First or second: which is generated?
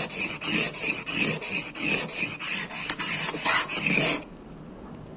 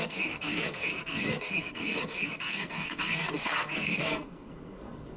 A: second